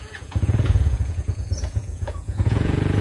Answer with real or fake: fake